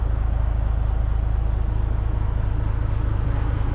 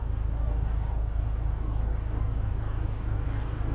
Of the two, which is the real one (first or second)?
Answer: first